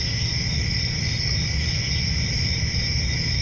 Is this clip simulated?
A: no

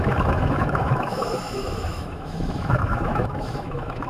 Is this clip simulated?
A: yes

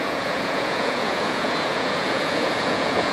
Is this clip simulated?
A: yes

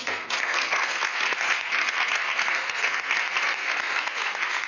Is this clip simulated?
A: yes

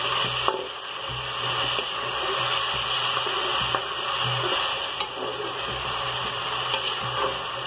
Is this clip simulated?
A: no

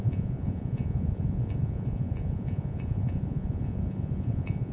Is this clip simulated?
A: yes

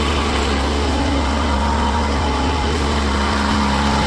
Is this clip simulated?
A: no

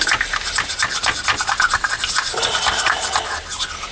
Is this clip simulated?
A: no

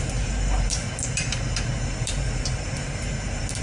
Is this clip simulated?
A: yes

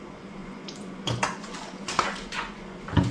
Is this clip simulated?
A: yes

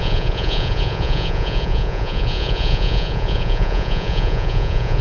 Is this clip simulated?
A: yes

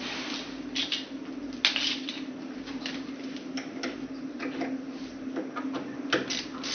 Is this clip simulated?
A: no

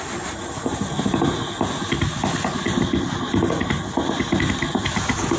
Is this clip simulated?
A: no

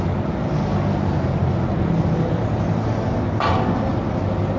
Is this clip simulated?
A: no